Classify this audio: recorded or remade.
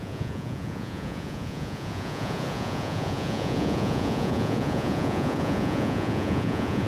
remade